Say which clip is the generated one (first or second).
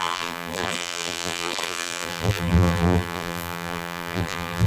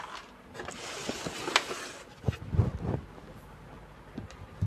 first